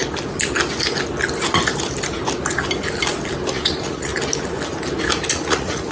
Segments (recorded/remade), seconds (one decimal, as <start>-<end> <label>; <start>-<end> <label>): 0.0-3.5 recorded; 3.5-4.1 remade; 4.1-5.3 recorded; 5.3-5.9 remade